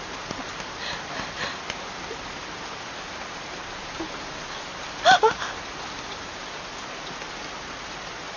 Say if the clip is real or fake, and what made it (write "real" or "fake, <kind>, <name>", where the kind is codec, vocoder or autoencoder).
real